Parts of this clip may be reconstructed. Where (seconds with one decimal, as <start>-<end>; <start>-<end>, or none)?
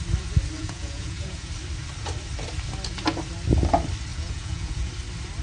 0.6-1.5; 4.1-4.9